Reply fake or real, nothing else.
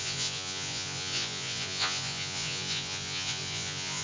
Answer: fake